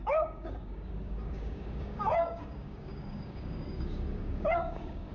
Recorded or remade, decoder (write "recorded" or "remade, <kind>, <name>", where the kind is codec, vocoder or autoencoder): remade, codec, DAC